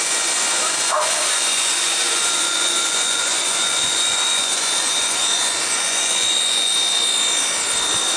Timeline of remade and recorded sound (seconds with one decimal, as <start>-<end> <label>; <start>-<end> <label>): 0.0-6.7 remade; 6.7-8.2 recorded